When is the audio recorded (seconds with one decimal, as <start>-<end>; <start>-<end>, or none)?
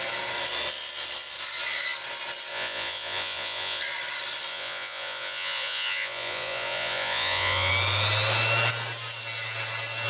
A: 0.0-2.5; 3.8-4.5; 7.7-10.1